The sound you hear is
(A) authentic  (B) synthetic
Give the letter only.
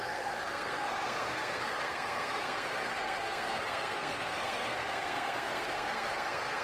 B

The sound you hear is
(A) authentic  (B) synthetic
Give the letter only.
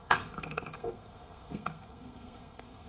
B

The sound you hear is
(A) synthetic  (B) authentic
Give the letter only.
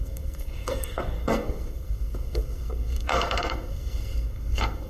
A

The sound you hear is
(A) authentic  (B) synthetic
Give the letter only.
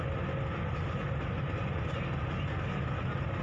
A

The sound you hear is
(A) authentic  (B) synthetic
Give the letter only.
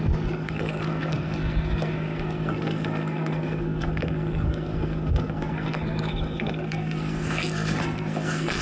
B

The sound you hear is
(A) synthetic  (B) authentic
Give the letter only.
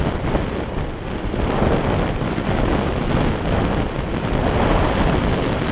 B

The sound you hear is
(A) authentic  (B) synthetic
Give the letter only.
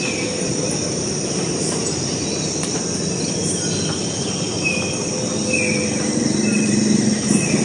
A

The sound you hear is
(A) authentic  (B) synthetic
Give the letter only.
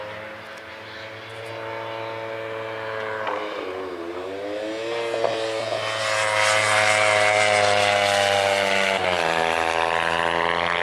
A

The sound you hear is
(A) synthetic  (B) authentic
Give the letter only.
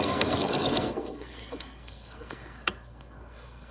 A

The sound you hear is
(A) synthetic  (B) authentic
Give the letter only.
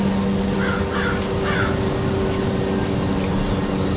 B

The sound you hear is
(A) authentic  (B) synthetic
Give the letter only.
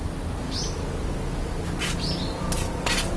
A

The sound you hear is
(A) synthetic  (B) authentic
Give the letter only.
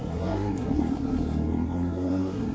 A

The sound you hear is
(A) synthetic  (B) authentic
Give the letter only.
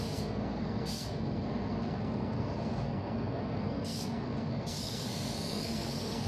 A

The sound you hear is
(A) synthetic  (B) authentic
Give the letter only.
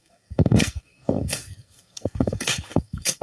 A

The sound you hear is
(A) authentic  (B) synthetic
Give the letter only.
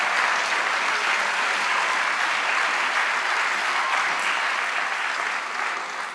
A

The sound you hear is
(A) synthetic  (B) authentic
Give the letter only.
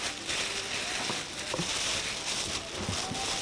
B